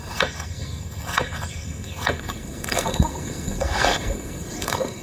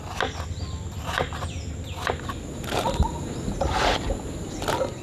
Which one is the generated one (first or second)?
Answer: first